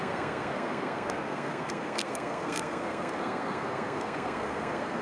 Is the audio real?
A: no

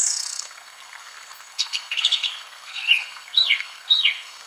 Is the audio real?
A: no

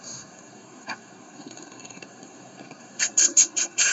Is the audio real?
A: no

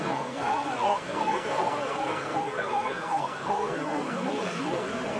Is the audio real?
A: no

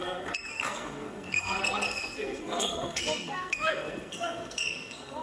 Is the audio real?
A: no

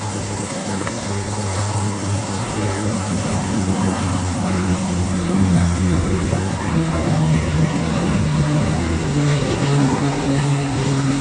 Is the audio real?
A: no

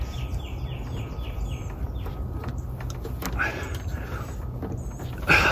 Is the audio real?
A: yes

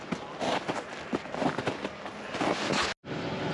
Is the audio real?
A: yes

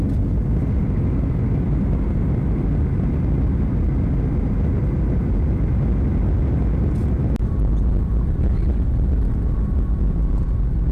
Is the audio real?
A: yes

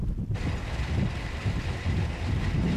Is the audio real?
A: yes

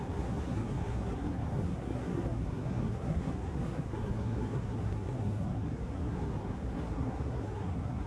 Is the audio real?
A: no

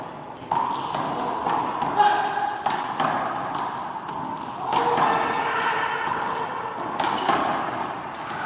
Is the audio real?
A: yes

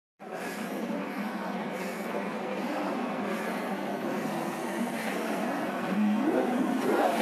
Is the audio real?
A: no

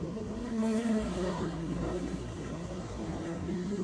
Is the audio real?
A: no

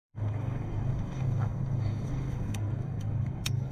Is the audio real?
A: no